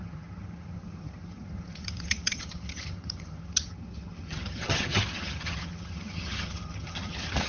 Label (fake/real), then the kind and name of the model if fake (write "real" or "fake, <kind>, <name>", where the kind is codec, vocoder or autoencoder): fake, vocoder, HiFi-GAN